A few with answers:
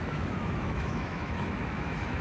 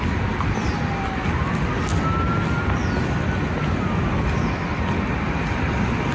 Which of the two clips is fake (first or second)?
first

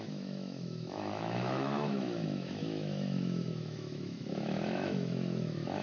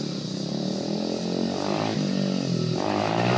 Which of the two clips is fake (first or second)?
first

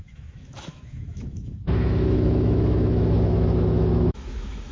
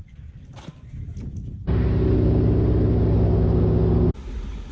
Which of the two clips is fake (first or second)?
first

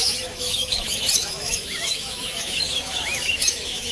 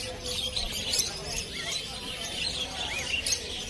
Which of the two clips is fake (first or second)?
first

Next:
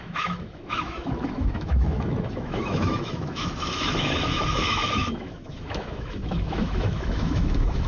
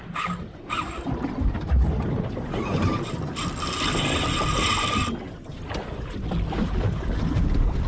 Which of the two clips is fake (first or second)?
first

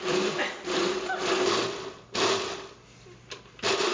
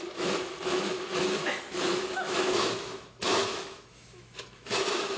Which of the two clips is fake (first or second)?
second